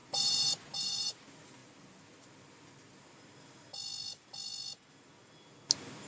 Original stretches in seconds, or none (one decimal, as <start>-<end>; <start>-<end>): 1.1-6.1